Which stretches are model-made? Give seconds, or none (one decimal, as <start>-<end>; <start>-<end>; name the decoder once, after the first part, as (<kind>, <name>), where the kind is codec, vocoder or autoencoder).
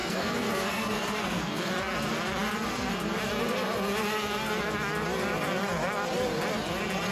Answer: 0.0-1.7 (codec, SNAC)